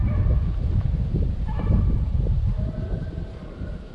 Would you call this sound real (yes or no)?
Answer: yes